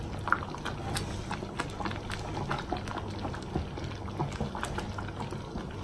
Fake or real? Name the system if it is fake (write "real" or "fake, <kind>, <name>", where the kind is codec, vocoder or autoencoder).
real